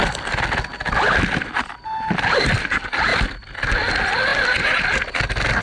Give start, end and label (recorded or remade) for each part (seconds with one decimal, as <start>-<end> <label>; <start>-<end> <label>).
0.0-5.6 recorded

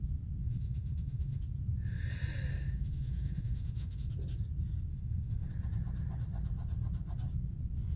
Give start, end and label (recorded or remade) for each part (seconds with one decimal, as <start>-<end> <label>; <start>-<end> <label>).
0.0-0.4 recorded; 0.4-1.4 remade; 1.4-2.5 recorded; 2.5-4.1 remade; 4.1-4.9 recorded; 4.9-5.5 remade; 5.5-8.0 recorded